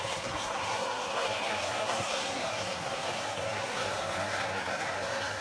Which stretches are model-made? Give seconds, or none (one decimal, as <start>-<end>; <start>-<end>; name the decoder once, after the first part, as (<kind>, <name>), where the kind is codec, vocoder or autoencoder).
0.0-5.4 (codec, SNAC)